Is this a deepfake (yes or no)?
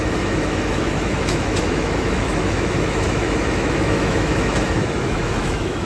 yes